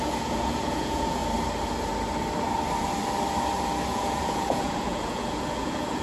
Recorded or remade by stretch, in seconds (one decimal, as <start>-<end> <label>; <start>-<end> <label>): 0.0-1.2 remade; 1.2-3.9 recorded; 3.9-6.0 remade